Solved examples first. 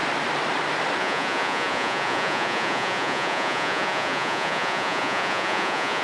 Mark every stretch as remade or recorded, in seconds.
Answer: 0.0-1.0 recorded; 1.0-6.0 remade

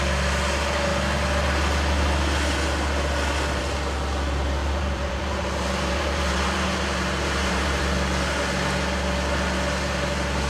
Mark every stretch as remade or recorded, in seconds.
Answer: 0.0-4.6 recorded; 4.6-7.8 remade; 7.8-10.5 recorded

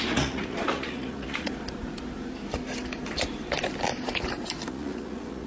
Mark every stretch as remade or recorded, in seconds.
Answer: 0.0-1.5 remade; 1.5-4.7 recorded; 4.7-5.5 remade

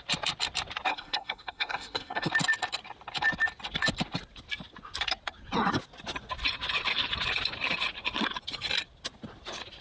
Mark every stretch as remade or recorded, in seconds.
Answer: 0.0-0.9 recorded; 0.9-2.3 remade; 2.3-9.8 recorded